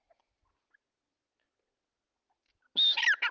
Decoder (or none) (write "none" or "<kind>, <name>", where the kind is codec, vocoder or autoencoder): none